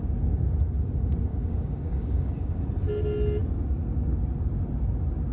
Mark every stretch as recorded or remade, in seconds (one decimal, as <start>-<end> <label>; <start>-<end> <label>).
0.0-1.3 recorded; 1.3-2.6 remade; 2.6-5.3 recorded